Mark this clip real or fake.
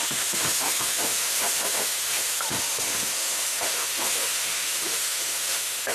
fake